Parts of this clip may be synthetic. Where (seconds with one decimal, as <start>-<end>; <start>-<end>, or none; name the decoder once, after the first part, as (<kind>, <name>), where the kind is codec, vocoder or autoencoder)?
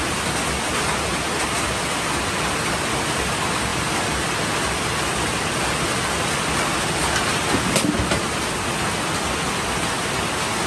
none